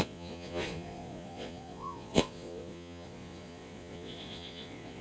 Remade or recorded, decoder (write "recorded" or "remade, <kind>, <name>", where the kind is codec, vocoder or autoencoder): remade, vocoder, Vocos